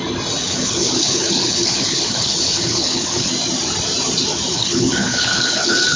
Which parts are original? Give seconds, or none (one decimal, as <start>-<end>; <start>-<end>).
0.0-0.4; 3.3-4.5